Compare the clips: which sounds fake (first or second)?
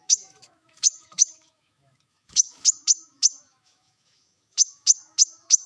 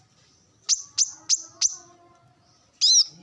first